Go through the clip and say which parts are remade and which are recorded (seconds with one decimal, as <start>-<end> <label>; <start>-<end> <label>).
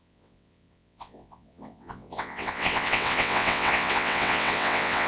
0.0-5.1 remade